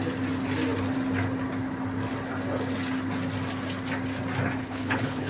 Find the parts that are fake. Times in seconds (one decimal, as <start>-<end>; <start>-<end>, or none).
4.6-5.3